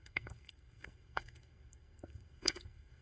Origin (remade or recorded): remade